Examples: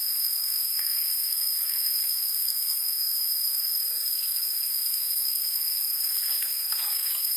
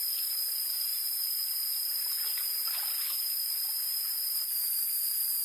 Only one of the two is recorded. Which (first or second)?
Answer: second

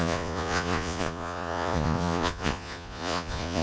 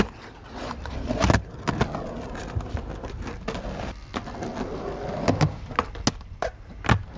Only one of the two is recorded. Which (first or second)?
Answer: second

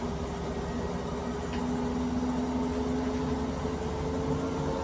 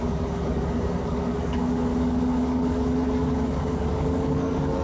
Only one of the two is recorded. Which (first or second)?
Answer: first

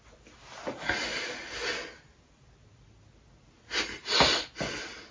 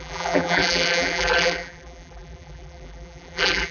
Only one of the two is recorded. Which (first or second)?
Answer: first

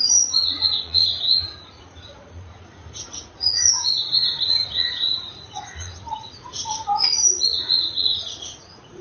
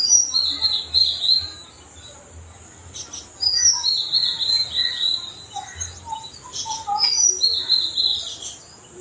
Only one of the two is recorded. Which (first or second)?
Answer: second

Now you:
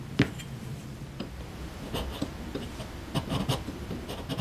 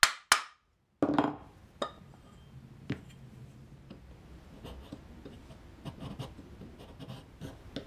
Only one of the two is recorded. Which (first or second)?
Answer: second